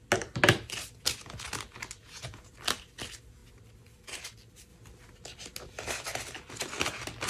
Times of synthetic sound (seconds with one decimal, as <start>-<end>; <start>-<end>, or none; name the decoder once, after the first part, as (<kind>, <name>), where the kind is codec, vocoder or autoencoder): 2.0-2.5 (vocoder, Vocos)

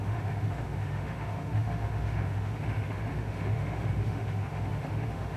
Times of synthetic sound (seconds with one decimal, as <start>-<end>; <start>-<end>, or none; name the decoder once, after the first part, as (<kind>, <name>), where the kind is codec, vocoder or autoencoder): 0.0-5.4 (autoencoder, DAC-VAE)

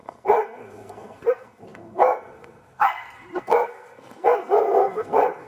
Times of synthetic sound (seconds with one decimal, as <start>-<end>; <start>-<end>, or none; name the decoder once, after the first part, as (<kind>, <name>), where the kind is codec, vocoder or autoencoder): 0.0-5.5 (codec, SNAC)

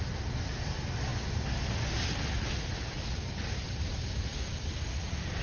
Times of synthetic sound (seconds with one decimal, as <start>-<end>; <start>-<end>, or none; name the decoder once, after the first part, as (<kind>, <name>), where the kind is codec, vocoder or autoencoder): none

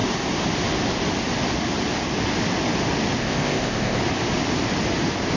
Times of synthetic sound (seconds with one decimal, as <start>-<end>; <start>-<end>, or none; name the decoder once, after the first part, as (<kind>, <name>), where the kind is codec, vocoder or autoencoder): 3.2-4.0 (codec, ZipCodec)

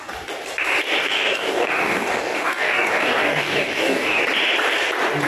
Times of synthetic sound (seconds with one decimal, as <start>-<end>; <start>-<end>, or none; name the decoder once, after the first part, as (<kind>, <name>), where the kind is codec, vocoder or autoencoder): 1.0-4.2 (codec, DAC)

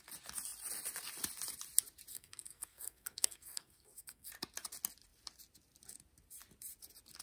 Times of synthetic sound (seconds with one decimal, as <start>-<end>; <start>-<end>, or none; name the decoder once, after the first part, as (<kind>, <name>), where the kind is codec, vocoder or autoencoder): 2.1-4.3 (codec, SNAC)

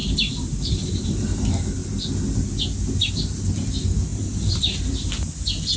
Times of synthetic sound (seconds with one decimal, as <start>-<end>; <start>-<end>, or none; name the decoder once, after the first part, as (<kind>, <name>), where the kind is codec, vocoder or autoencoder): 0.0-1.4 (vocoder, BigVGAN v2); 4.1-5.1